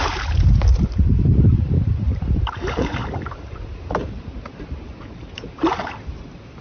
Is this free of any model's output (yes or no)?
no